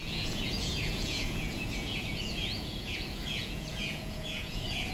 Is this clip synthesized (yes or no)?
yes